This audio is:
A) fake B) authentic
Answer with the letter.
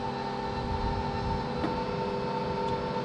B